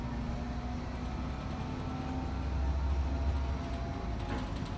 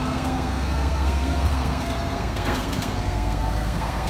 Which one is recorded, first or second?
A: first